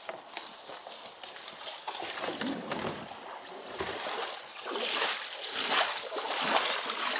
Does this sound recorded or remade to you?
recorded